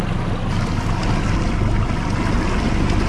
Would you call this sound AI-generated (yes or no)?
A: no